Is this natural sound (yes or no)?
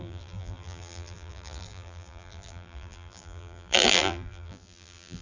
no